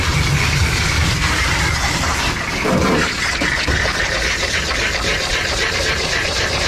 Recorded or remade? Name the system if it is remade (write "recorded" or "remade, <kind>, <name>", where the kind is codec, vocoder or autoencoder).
remade, vocoder, BigVGAN v2